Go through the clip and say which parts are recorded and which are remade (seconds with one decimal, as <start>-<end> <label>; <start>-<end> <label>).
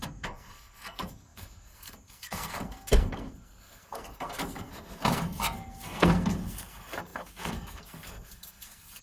0.0-9.0 remade